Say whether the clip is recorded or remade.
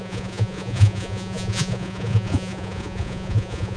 remade